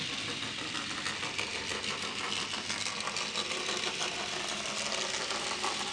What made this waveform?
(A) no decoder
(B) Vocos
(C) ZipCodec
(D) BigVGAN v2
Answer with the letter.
A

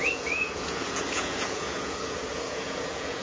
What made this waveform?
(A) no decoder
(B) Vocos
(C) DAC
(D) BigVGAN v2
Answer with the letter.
B